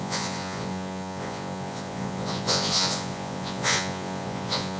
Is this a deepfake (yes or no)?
yes